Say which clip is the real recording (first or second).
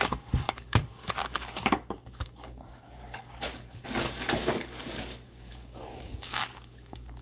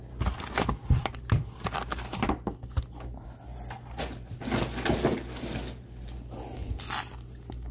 second